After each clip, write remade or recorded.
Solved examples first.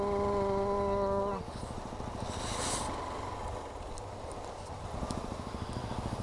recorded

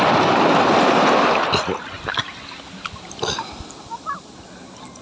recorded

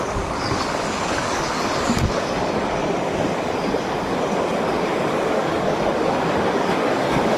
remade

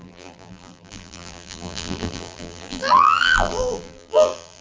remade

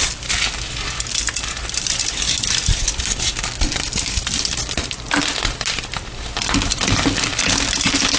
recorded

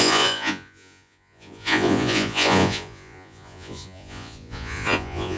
remade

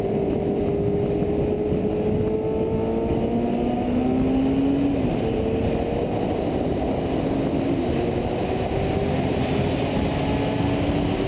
recorded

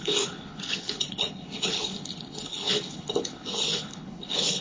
remade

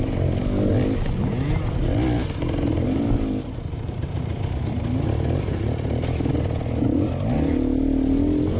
recorded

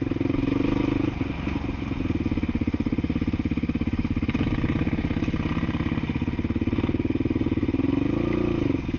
recorded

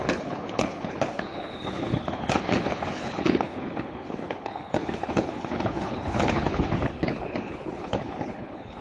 remade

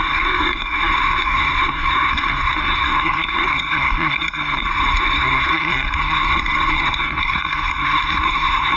remade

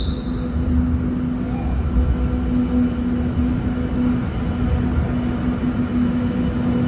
recorded